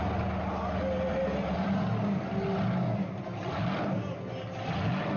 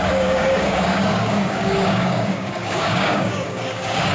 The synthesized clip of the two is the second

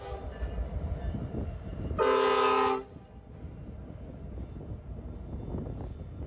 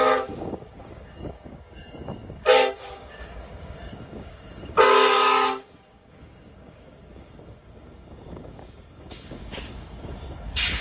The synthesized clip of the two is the second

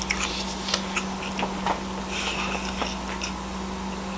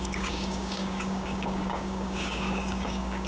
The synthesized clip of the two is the second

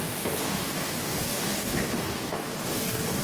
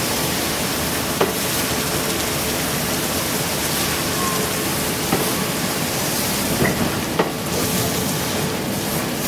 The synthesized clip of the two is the first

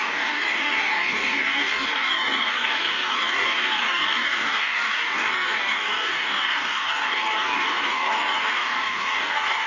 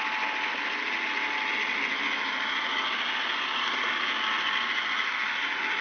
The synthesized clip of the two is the first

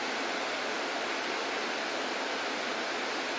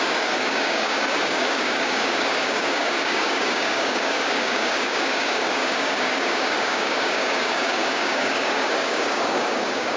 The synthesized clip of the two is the second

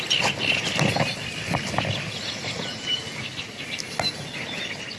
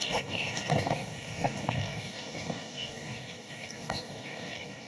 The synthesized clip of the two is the second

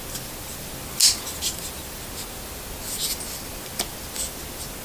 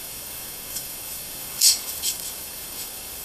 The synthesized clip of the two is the second